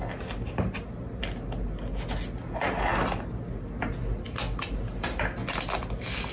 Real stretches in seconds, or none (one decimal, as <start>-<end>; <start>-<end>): 0.0-6.3